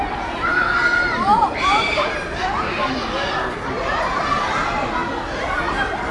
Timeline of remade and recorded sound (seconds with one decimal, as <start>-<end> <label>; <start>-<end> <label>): 0.0-0.9 recorded; 0.9-4.2 remade; 4.2-5.0 recorded; 5.0-6.1 remade